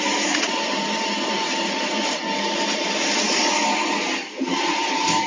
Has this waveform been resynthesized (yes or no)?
yes